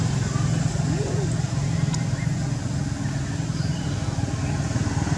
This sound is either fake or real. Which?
real